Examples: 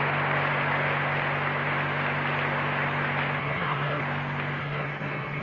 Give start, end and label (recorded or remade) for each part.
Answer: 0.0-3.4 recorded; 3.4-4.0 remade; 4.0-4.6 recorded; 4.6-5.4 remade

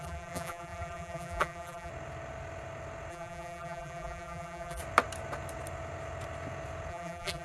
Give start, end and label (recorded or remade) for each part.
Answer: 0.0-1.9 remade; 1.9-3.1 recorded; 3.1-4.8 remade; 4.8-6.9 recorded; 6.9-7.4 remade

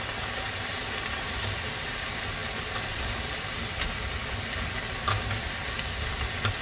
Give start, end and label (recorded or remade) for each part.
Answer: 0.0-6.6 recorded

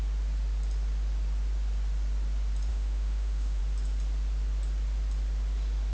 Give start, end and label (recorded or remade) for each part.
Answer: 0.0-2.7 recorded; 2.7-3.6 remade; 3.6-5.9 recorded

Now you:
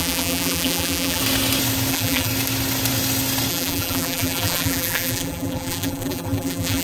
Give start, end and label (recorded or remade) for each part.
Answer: 0.0-1.2 remade; 1.2-1.9 recorded; 1.9-2.3 remade; 2.3-3.5 recorded; 3.5-6.8 remade